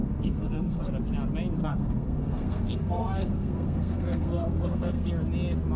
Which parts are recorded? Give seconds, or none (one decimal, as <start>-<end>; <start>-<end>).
0.9-1.6; 5.1-5.8